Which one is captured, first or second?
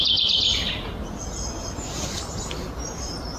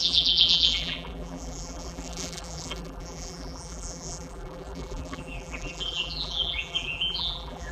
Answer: first